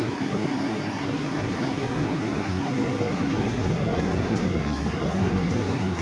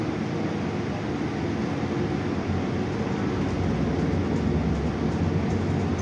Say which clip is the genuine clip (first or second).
second